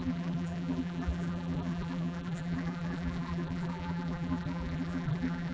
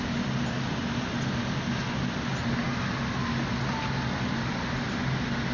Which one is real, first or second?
second